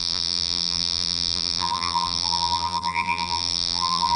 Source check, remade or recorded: remade